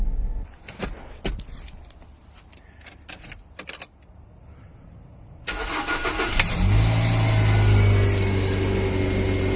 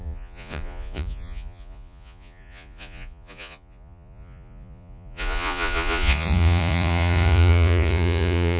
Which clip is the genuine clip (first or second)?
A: first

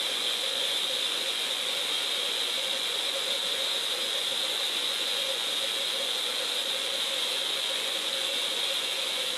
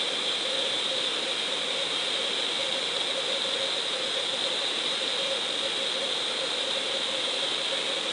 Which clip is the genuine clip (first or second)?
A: second